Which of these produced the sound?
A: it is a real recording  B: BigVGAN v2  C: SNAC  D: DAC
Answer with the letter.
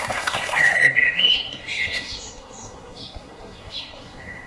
C